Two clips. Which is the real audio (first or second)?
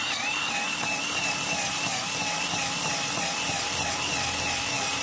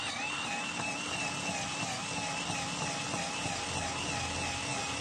second